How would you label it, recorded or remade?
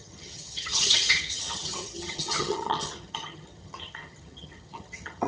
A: remade